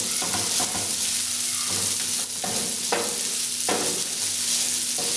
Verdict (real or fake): real